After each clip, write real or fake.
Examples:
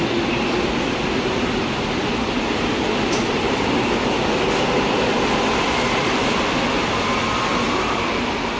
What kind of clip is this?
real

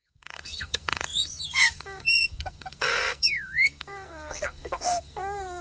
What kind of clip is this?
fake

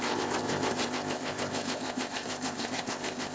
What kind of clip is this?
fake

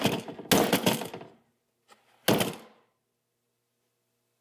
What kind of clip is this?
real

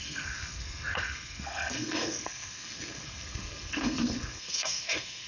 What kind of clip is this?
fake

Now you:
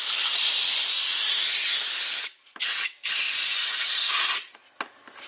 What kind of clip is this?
real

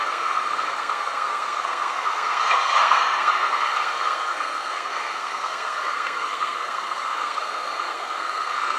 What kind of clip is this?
fake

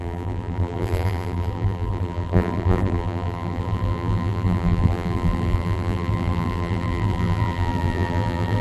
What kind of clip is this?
fake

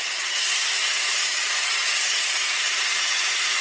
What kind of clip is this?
fake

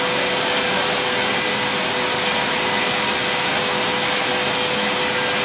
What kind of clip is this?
real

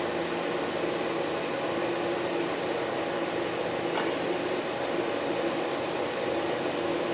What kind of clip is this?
real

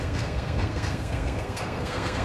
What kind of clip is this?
fake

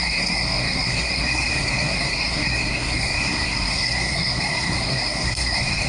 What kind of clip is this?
fake